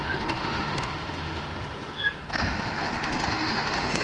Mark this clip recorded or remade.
remade